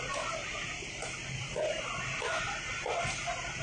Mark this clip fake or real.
real